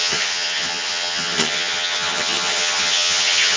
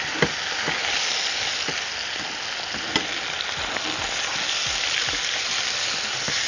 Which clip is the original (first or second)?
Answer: second